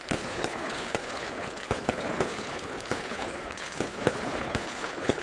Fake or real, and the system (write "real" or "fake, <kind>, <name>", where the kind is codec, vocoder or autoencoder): fake, codec, HILCodec